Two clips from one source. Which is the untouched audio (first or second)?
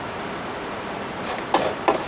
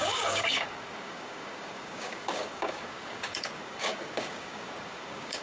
first